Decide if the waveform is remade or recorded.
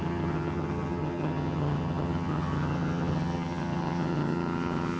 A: remade